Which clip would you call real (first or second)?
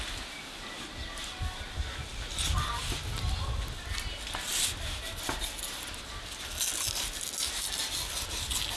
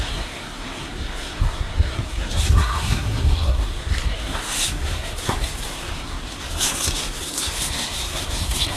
first